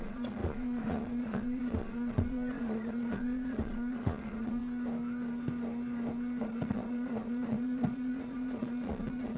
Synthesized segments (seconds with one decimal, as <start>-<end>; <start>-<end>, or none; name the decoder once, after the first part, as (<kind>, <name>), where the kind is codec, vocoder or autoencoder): 0.0-4.6 (vocoder, Vocos); 6.4-9.4